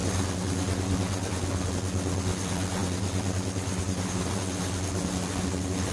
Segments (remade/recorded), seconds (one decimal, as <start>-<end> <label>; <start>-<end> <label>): 0.0-5.9 recorded